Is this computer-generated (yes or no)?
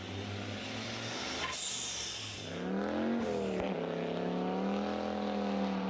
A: no